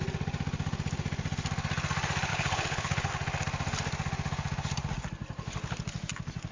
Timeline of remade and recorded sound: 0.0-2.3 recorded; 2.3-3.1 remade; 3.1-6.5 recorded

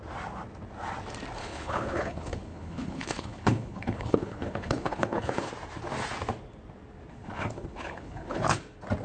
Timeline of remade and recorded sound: 0.0-1.4 recorded; 1.4-5.5 remade; 5.5-7.1 recorded; 7.1-8.6 remade; 8.6-9.0 recorded

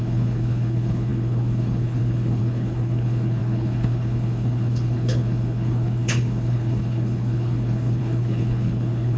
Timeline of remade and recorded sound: 0.0-9.2 remade

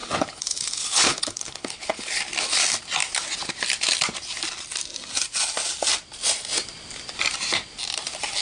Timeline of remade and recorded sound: 0.0-2.2 remade; 2.2-8.4 recorded

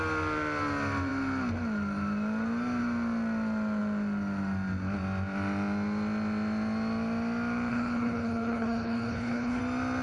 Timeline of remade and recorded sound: 0.0-7.7 recorded; 7.7-9.6 remade; 9.6-10.0 recorded

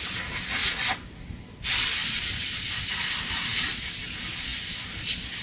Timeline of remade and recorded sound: 0.0-5.4 recorded